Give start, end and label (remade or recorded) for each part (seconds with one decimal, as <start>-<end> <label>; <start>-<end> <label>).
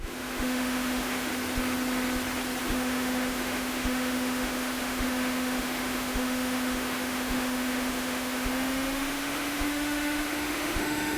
0.0-1.3 remade; 1.3-2.6 recorded; 2.6-11.2 remade